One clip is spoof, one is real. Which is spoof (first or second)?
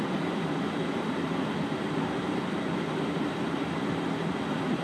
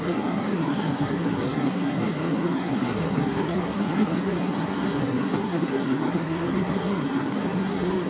second